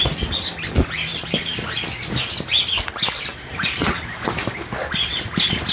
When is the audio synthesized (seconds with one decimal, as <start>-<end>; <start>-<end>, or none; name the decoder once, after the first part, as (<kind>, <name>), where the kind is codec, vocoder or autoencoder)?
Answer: 3.3-4.0 (vocoder, Vocos)